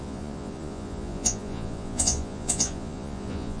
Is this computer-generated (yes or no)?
yes